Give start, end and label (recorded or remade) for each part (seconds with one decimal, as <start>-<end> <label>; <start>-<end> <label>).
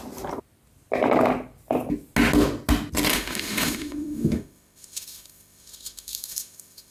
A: 0.0-3.1 recorded; 3.1-6.9 remade